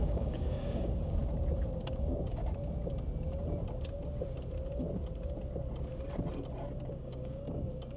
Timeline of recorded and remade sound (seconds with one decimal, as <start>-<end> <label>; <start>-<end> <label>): 0.0-1.2 remade; 1.2-2.0 recorded; 2.0-2.4 remade; 2.4-6.9 recorded; 6.9-8.0 remade